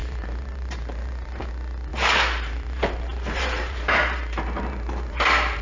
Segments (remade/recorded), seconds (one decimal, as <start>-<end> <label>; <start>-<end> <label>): 0.0-1.5 remade; 1.5-1.9 recorded; 1.9-5.6 remade